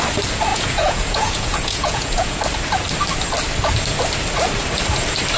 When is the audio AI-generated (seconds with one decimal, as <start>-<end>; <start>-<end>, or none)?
0.5-2.4